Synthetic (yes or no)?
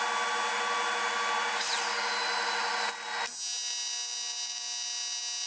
no